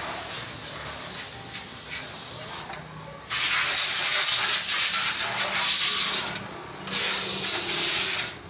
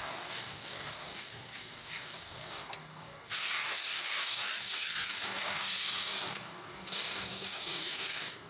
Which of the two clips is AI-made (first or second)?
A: second